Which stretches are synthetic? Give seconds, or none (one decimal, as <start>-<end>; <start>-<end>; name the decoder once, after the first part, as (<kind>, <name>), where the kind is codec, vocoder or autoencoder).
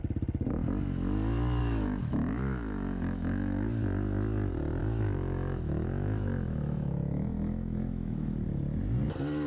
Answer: 1.6-3.7 (autoencoder, DAC-VAE); 4.8-8.3